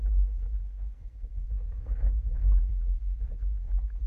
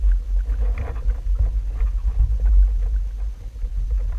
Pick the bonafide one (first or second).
second